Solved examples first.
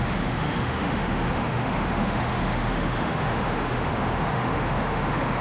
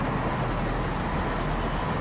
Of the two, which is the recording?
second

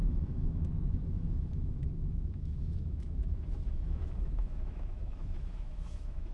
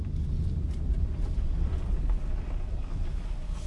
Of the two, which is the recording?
second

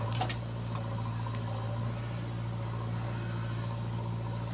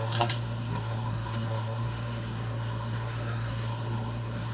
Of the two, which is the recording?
first